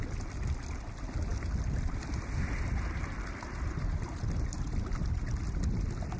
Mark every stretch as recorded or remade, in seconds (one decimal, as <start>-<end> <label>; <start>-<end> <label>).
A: 0.0-6.2 recorded